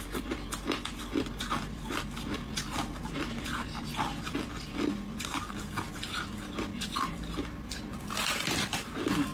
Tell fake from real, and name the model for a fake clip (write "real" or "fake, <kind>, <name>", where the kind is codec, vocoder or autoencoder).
real